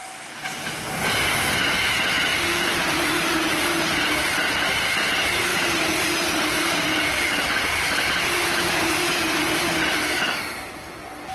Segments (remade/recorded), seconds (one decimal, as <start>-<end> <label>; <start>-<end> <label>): 0.0-2.3 recorded; 2.3-5.0 remade; 5.0-5.5 recorded; 5.5-9.7 remade; 9.7-11.3 recorded